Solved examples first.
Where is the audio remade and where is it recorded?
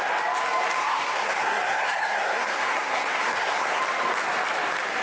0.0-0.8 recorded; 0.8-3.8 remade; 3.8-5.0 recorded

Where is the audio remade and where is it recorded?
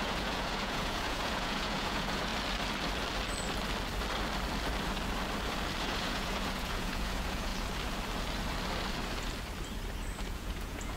0.0-2.3 remade; 2.3-5.8 recorded; 5.8-7.5 remade; 7.5-10.2 recorded; 10.2-11.0 remade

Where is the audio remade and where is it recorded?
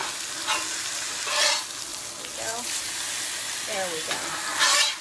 0.0-5.0 recorded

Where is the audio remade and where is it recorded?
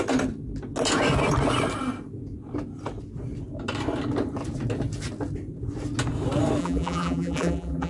0.0-6.6 recorded; 6.6-7.9 remade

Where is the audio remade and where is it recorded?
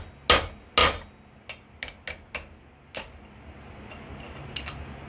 0.0-5.1 recorded